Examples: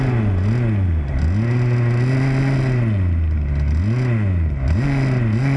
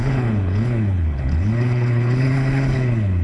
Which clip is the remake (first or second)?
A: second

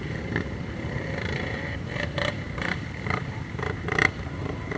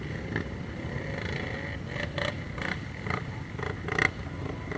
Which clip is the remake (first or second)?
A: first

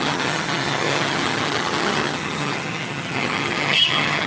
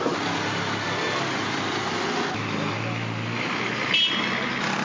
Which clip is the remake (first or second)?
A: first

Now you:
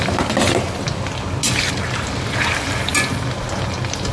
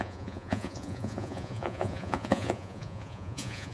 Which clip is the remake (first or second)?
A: second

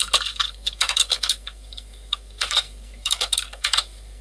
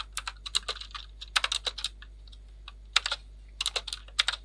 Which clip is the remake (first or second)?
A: first